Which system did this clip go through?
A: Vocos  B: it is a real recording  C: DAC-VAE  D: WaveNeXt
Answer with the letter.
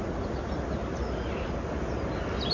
B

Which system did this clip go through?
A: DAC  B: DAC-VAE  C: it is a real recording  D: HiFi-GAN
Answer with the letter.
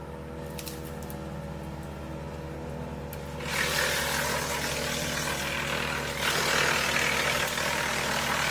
C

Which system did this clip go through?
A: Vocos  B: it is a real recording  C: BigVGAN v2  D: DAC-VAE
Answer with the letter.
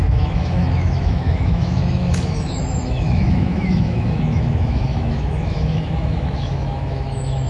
D